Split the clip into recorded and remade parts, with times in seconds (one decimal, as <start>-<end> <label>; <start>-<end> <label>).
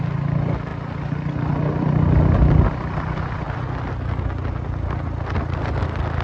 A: 0.0-6.2 recorded